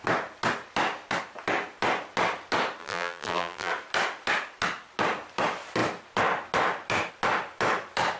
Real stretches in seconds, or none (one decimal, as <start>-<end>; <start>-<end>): 0.0-2.8; 3.7-8.2